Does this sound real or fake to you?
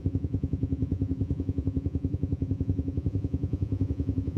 fake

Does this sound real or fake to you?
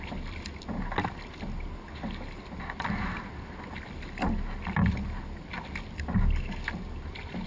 real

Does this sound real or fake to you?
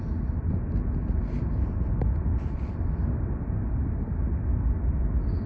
real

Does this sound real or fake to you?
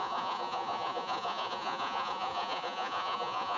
fake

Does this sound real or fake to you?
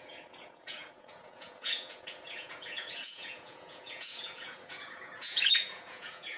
fake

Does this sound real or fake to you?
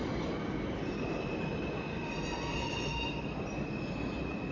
real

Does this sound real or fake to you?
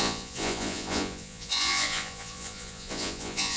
fake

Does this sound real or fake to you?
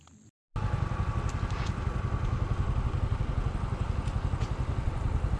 real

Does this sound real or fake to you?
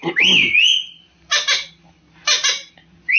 real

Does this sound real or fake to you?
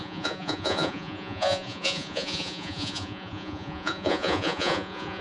fake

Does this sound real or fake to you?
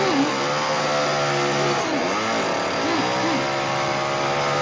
real